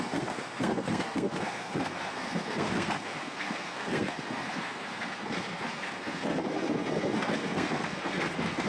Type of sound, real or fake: fake